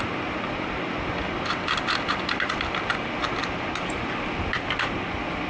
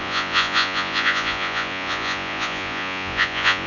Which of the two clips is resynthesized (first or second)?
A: second